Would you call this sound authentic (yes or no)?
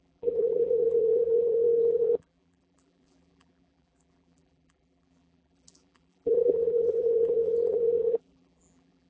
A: no